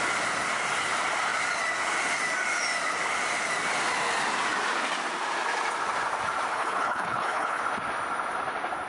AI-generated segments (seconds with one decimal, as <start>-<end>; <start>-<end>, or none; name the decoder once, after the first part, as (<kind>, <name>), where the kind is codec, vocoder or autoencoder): 6.5-7.6 (codec, HILCodec)

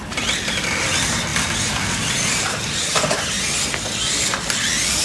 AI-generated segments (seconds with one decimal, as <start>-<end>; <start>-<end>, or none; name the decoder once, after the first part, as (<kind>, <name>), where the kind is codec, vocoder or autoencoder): none

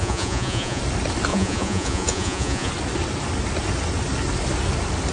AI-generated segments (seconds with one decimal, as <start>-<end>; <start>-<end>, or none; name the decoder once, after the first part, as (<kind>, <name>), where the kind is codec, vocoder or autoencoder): 0.0-0.8 (vocoder, Vocos); 1.3-2.7

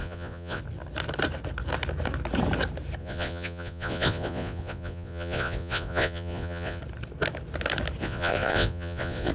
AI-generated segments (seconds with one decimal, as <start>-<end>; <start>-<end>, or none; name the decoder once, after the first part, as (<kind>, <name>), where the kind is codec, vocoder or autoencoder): 0.0-0.6 (vocoder, Vocos); 3.0-6.8; 8.0-9.3

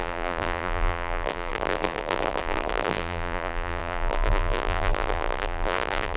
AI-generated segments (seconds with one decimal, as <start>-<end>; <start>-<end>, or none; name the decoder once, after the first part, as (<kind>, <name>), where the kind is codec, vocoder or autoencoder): 0.0-6.2 (vocoder, BigVGAN v2)

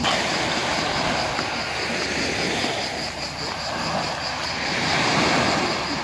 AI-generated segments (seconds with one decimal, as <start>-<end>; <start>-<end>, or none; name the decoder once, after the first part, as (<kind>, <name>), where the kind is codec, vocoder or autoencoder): none